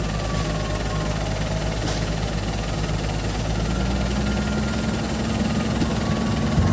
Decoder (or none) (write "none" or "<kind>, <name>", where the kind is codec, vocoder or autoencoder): none